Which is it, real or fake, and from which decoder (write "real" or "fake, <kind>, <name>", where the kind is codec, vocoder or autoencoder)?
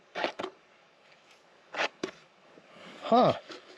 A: fake, codec, DAC